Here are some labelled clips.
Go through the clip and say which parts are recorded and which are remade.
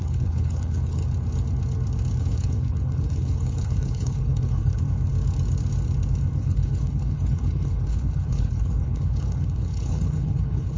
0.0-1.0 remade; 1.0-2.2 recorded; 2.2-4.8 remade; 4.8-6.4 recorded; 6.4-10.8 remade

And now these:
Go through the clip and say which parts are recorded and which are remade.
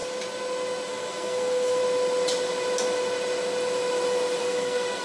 0.0-0.9 recorded; 0.9-1.8 remade; 1.8-4.4 recorded; 4.4-5.0 remade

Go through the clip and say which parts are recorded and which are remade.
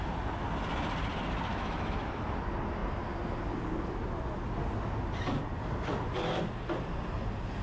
0.0-1.5 recorded; 1.5-2.2 remade; 2.2-7.6 recorded